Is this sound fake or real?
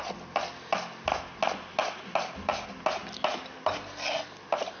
real